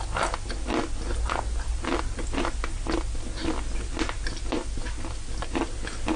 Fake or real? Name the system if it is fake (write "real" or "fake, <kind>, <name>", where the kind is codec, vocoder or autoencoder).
real